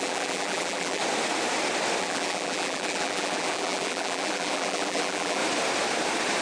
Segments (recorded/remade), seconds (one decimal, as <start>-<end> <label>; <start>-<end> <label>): 0.0-1.0 remade; 1.0-2.0 recorded; 2.0-5.4 remade; 5.4-6.4 recorded